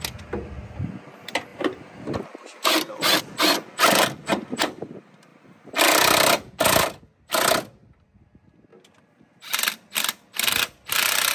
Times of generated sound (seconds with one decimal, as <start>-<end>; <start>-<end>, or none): 1.5-3.2; 5.3-7.0